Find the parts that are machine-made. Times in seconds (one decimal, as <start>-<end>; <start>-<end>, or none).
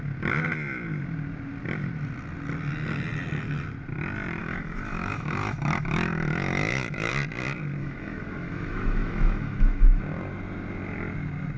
4.4-7.1; 7.8-10.0